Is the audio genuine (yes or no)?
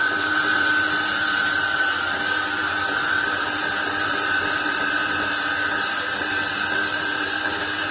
no